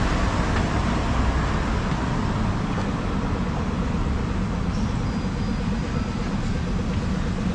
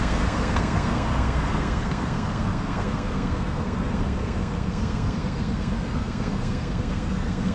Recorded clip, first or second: first